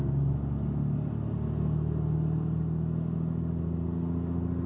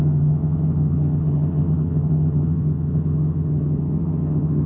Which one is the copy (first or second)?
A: second